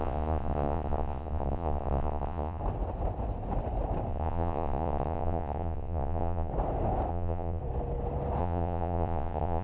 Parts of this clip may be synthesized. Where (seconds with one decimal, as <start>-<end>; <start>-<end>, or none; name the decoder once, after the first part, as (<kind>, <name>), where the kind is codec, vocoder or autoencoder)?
0.0-2.6 (vocoder, Vocos); 4.1-6.5; 7.1-7.6; 8.4-9.6